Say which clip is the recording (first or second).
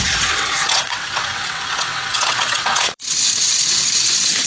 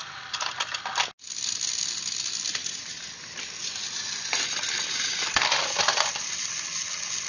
second